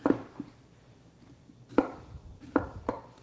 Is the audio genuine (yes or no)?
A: no